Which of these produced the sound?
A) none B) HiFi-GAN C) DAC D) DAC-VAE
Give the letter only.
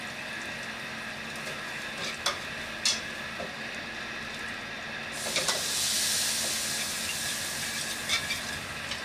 A